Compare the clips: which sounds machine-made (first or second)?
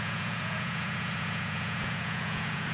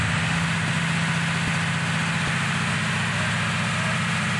first